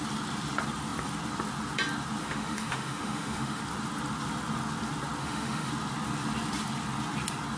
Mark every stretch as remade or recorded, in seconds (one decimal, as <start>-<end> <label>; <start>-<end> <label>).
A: 0.0-2.2 recorded; 2.2-3.6 remade; 3.6-5.2 recorded; 5.2-5.7 remade; 5.7-7.6 recorded